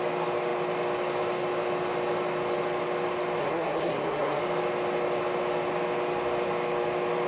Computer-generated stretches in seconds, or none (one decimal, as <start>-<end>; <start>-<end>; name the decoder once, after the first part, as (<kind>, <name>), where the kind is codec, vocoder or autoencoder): 3.4-4.4 (codec, SNAC)